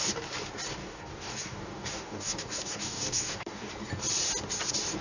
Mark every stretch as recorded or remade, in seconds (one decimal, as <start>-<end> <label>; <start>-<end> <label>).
0.0-0.8 recorded; 0.8-3.7 remade; 3.7-5.0 recorded